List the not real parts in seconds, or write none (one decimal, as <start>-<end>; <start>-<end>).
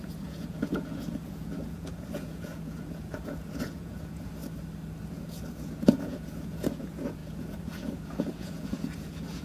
0.0-4.4; 5.1-9.4